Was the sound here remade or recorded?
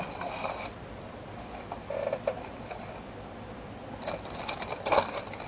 recorded